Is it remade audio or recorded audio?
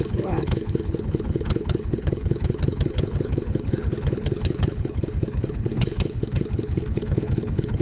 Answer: remade